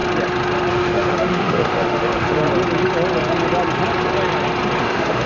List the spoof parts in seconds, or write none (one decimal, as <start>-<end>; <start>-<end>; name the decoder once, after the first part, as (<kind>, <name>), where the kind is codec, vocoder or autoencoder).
0.7-2.4 (autoencoder, DAC-VAE); 4.8-5.3